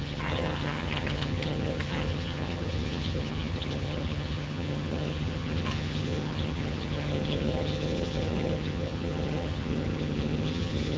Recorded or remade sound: remade